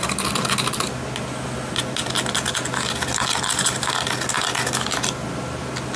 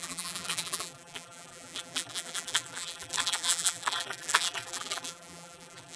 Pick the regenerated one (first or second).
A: second